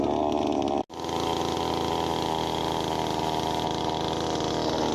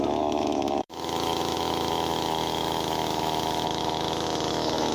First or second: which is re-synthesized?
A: second